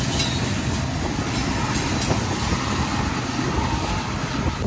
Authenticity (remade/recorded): recorded